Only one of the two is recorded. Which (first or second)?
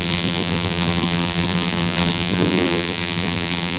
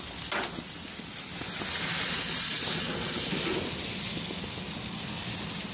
second